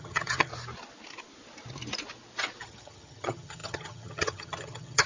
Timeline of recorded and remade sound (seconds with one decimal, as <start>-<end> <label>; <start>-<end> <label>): 0.0-0.5 remade; 0.5-2.6 recorded; 2.6-5.1 remade